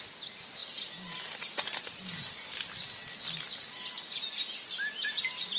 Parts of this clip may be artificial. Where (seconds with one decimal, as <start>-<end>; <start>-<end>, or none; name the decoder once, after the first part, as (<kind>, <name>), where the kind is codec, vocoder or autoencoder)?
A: none